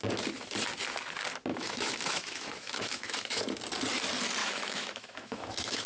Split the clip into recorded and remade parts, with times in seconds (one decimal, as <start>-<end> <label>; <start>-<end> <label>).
0.0-1.5 recorded; 1.5-3.4 remade; 3.4-4.4 recorded; 4.4-5.9 remade